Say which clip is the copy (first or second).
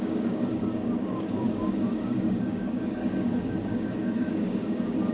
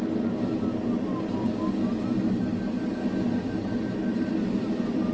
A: first